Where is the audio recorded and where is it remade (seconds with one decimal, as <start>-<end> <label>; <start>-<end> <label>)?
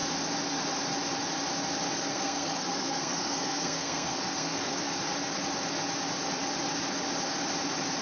0.0-2.1 recorded; 2.1-4.9 remade; 4.9-8.0 recorded